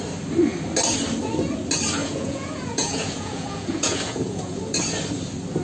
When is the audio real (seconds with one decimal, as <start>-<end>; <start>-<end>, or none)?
0.0-2.0; 4.6-5.6